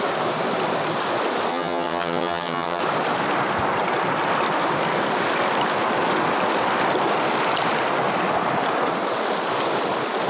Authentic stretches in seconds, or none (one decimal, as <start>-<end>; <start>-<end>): 0.0-1.5; 2.8-10.3